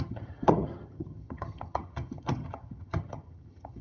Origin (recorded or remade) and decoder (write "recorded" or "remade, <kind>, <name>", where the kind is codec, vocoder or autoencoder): remade, vocoder, HiFi-GAN